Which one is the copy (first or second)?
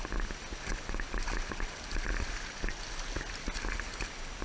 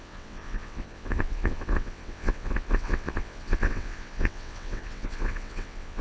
second